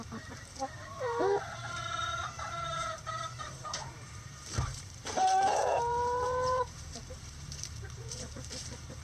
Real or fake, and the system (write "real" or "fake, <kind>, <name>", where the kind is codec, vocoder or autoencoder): fake, vocoder, BigVGAN v2